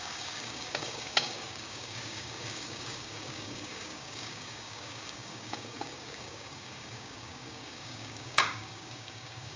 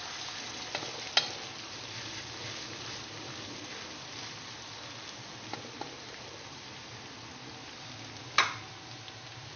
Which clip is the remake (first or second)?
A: first